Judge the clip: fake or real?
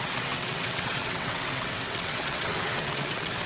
fake